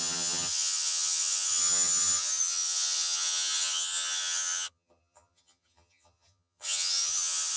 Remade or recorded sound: remade